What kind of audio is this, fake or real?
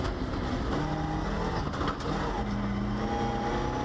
real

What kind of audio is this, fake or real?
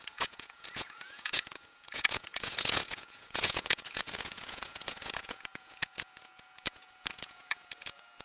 fake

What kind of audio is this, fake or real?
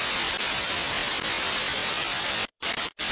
real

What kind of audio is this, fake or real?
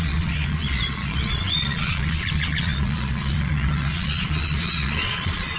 fake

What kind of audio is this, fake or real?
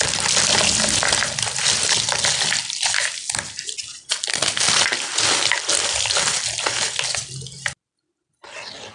real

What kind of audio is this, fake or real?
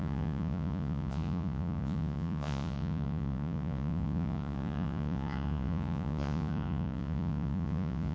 fake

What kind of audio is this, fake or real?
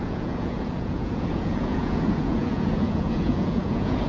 fake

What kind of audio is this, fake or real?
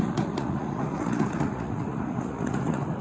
fake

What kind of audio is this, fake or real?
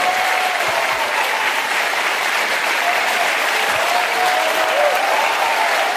real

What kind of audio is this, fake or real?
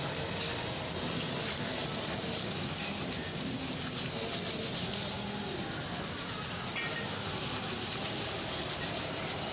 real